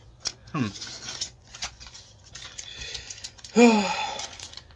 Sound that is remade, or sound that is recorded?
remade